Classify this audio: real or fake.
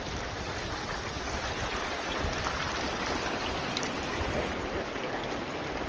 real